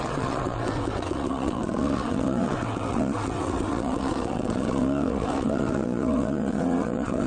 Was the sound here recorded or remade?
remade